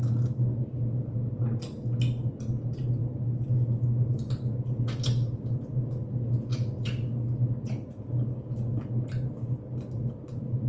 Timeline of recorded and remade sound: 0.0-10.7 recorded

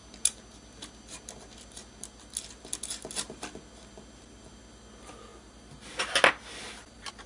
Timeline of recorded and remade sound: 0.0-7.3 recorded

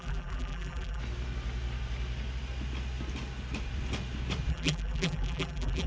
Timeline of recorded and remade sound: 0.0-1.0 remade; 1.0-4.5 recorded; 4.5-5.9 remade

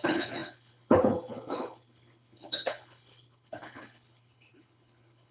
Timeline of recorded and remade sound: 0.0-5.3 remade

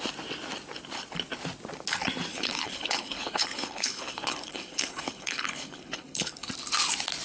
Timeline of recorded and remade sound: 0.0-2.3 recorded; 2.3-6.5 remade; 6.5-7.2 recorded

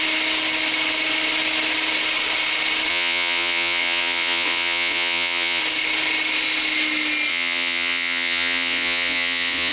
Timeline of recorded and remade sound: 0.0-2.9 recorded; 2.9-5.6 remade; 5.6-7.3 recorded; 7.3-9.7 remade

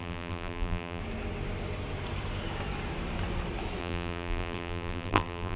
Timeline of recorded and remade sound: 0.0-1.0 remade; 1.0-3.8 recorded; 3.8-5.6 remade